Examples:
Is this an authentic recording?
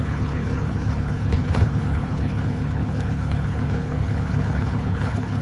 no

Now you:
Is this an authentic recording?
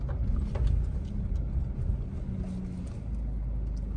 yes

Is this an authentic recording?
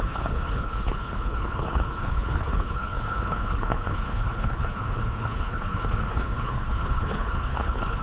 no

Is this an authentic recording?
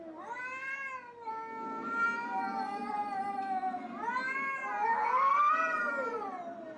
yes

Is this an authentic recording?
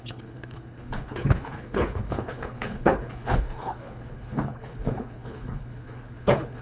no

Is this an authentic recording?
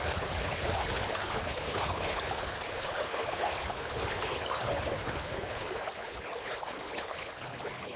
no